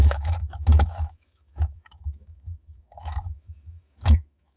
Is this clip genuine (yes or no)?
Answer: no